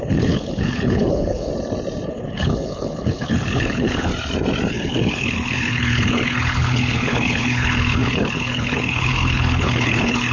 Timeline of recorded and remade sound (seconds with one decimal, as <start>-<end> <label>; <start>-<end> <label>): 0.0-1.5 remade; 1.5-2.1 recorded; 2.1-4.1 remade; 4.1-4.7 recorded; 4.7-10.3 remade